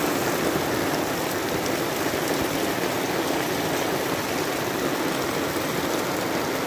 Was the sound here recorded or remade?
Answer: recorded